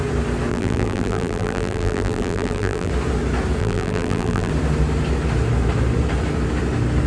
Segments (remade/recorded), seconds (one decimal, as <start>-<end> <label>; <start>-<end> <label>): 0.0-0.5 recorded; 0.5-2.9 remade; 2.9-3.6 recorded; 3.6-4.5 remade; 4.5-7.1 recorded